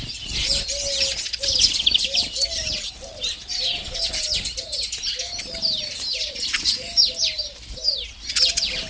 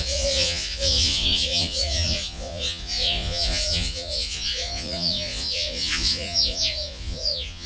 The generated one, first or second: second